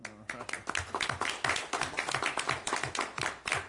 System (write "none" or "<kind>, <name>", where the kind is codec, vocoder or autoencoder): none